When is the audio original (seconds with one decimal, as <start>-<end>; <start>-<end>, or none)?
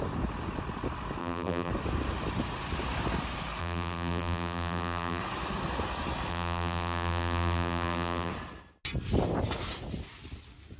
0.0-1.2; 1.7-3.6; 5.2-6.3; 8.3-10.8